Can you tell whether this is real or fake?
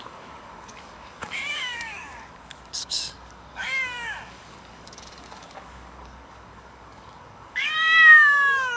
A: fake